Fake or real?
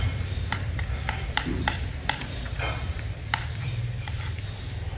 fake